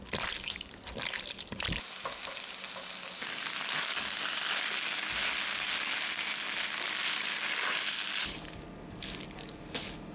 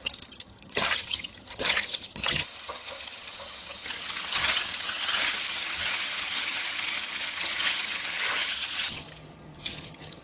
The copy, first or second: second